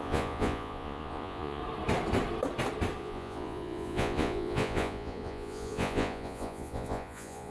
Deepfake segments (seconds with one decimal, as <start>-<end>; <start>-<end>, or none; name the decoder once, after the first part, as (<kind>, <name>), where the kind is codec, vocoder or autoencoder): 0.0-1.6 (vocoder, Vocos); 3.0-7.5